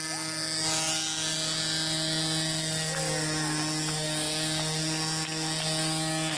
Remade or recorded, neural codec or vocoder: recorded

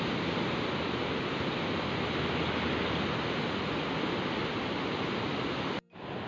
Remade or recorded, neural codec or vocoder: recorded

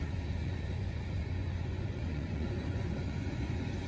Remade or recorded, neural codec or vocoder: remade, vocoder, Vocos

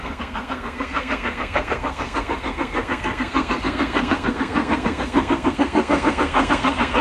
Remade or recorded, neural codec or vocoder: remade, codec, SNAC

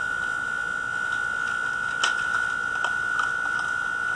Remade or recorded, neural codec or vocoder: recorded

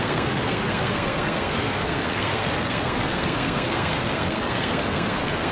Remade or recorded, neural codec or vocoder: remade, codec, SNAC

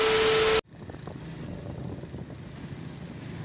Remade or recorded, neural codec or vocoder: recorded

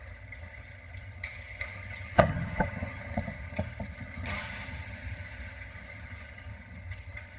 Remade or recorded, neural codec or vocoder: remade, vocoder, HiFi-GAN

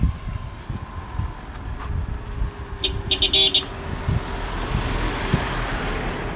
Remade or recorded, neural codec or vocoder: recorded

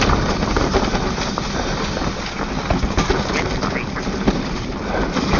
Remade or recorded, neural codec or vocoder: recorded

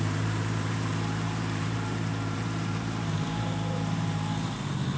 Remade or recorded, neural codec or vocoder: remade, vocoder, BigVGAN v2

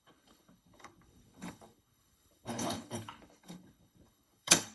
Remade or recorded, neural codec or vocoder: remade, codec, HILCodec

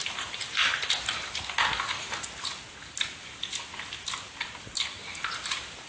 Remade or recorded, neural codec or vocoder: recorded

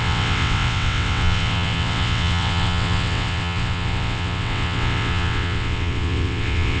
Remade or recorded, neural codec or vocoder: remade, vocoder, WaveNeXt